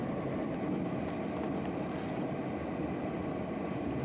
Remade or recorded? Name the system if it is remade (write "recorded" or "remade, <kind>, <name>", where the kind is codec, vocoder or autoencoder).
recorded